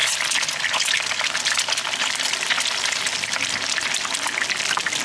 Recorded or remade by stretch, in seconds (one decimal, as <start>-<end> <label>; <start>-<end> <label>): 0.0-5.0 recorded